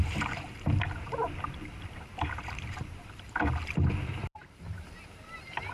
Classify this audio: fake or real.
fake